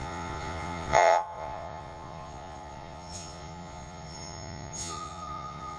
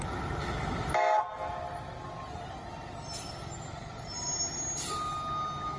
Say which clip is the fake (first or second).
first